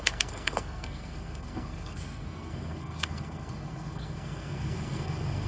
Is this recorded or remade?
remade